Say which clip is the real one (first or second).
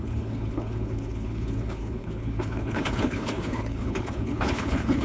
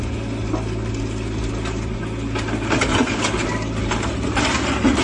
second